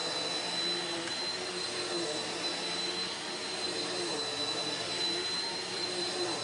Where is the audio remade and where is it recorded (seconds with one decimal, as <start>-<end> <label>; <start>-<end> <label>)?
0.0-3.6 recorded; 3.6-6.4 remade

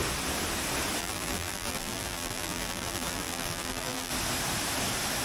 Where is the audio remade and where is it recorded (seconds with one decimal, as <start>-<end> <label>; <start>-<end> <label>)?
0.0-1.0 recorded; 1.0-4.1 remade; 4.1-5.2 recorded

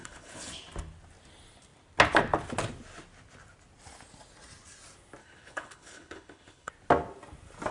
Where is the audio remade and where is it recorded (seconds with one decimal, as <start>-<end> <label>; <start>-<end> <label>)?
0.0-0.5 remade; 0.5-5.2 recorded; 5.2-6.7 remade; 6.7-7.7 recorded

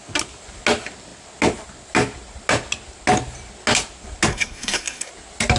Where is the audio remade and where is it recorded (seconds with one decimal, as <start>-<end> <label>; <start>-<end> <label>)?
0.0-4.3 recorded; 4.3-5.1 remade; 5.1-5.6 recorded

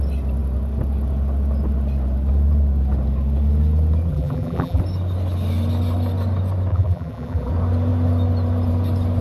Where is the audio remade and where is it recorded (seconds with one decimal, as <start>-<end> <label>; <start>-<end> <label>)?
0.0-4.1 recorded; 4.1-4.8 remade; 4.8-6.7 recorded; 6.7-7.5 remade; 7.5-9.2 recorded